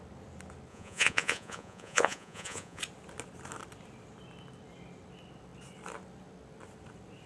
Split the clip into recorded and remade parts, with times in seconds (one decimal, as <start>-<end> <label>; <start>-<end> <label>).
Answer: 0.0-0.7 recorded; 0.7-2.8 remade; 2.8-7.3 recorded